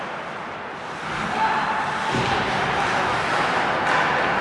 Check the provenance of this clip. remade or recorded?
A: recorded